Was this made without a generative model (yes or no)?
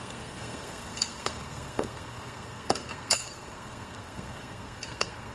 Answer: no